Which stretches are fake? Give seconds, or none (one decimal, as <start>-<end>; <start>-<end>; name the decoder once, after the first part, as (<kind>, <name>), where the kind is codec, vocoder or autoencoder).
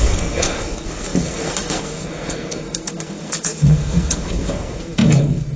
0.0-5.6 (codec, SNAC)